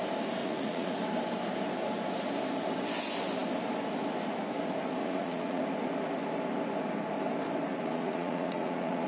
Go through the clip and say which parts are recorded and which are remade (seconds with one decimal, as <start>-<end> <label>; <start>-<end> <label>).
0.0-0.4 recorded; 0.4-0.9 remade; 0.9-5.0 recorded; 5.0-5.6 remade; 5.6-7.7 recorded; 7.7-9.1 remade